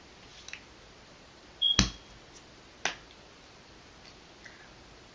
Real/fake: real